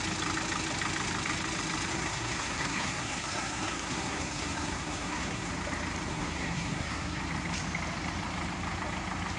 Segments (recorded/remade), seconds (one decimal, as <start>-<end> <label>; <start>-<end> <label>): 0.0-1.9 recorded; 1.9-5.5 remade; 5.5-6.1 recorded; 6.1-7.2 remade; 7.2-9.4 recorded